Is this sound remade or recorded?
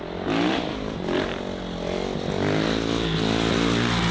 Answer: recorded